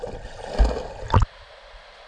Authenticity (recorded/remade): recorded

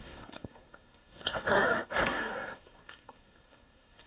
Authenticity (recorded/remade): remade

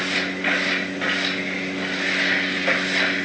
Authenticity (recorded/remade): recorded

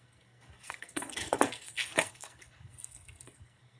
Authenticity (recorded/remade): remade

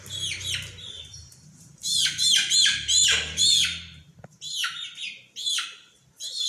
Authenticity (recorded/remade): recorded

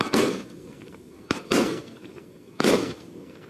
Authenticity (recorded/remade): remade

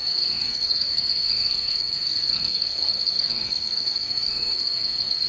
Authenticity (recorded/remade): remade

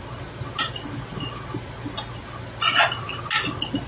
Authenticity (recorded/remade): recorded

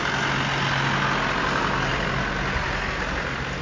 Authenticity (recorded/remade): recorded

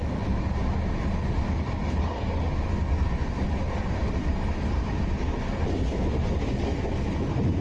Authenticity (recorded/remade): recorded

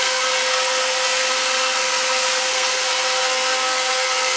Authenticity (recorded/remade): remade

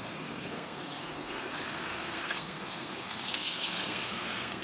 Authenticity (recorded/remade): remade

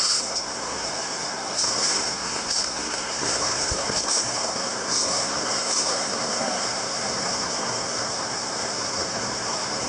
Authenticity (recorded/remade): remade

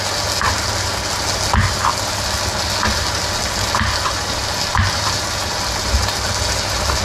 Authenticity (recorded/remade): recorded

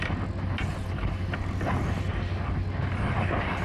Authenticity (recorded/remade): recorded